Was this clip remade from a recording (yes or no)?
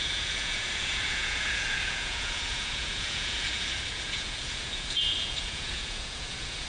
yes